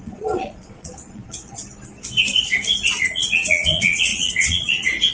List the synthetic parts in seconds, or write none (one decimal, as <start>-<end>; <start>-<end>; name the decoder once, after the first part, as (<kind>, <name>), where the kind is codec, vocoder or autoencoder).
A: 0.0-1.6 (vocoder, Vocos); 2.9-5.1